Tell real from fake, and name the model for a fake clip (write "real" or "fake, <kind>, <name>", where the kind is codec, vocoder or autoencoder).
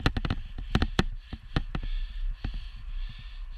real